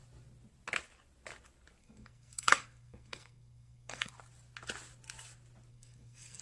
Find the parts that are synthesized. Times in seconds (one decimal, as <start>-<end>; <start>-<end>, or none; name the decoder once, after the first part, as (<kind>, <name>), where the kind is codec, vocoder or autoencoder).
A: 1.8-4.1 (codec, SNAC); 5.7-6.4